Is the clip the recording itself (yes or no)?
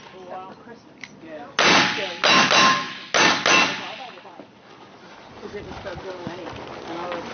yes